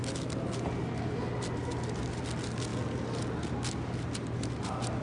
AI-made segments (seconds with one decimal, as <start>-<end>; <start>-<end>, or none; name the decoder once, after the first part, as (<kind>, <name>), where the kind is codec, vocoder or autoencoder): none